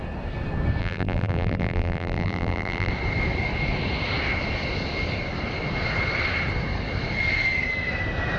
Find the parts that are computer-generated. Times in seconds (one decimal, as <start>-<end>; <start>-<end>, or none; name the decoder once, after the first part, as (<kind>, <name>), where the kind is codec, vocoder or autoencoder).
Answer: 0.8-2.9 (vocoder, BigVGAN v2)